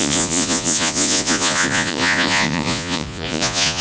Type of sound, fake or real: fake